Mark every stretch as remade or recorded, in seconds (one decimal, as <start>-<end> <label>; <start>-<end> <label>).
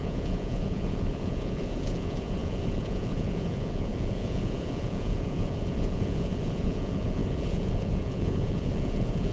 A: 0.0-9.3 remade